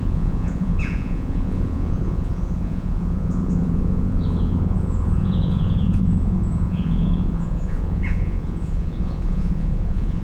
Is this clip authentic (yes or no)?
no